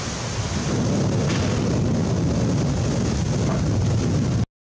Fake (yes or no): no